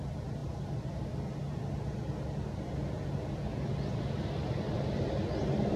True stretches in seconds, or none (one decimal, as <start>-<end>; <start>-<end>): 0.0-5.8